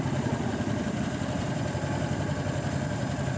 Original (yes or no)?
no